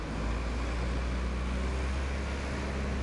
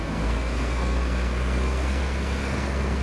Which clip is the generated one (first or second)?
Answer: second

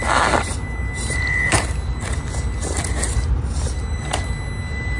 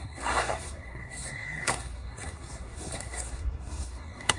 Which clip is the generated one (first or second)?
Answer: second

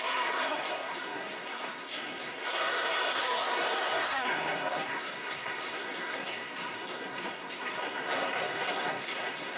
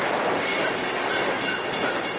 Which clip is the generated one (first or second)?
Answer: first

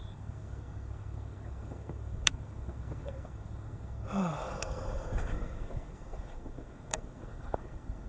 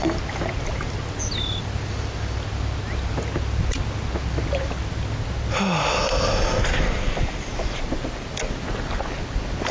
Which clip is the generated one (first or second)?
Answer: first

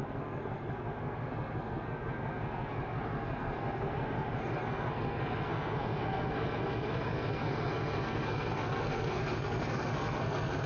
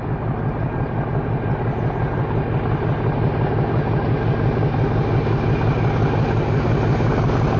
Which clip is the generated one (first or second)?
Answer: first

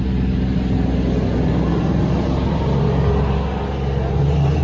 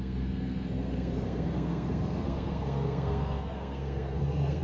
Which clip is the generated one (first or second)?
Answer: second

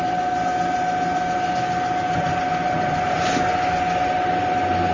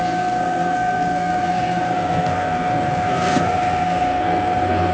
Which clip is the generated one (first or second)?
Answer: second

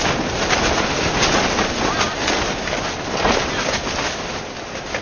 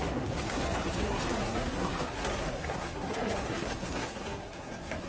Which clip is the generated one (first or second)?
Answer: second